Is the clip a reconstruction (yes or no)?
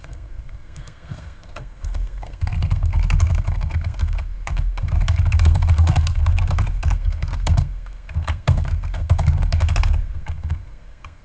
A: yes